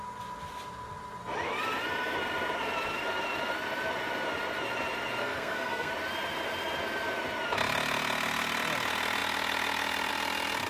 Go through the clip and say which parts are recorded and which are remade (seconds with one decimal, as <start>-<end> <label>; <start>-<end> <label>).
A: 0.0-5.2 recorded; 5.2-5.9 remade; 5.9-10.7 recorded